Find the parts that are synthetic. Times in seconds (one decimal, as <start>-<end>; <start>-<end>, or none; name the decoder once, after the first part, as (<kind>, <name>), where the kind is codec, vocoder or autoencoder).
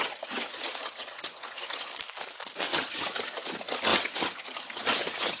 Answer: 0.0-1.9 (vocoder, HiFi-GAN); 2.7-5.4